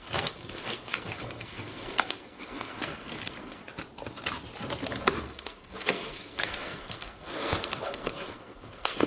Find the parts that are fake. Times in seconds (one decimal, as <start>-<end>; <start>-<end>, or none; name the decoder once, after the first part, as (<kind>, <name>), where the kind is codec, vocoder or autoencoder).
0.0-3.6 (codec, SNAC); 5.2-9.1